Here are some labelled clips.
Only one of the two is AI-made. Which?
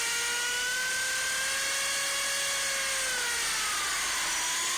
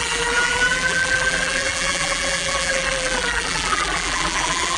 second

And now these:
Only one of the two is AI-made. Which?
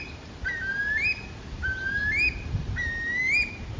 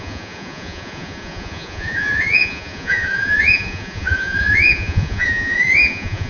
second